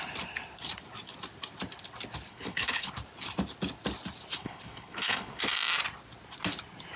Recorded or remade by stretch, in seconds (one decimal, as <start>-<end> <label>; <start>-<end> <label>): 0.0-2.3 recorded; 2.3-2.9 remade; 2.9-4.4 recorded; 4.4-5.4 remade; 5.4-7.0 recorded